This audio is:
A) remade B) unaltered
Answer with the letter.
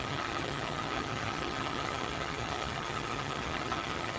A